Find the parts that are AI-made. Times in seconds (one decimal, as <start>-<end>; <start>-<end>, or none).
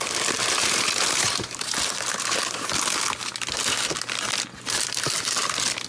0.4-2.7